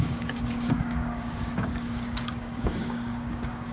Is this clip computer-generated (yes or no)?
yes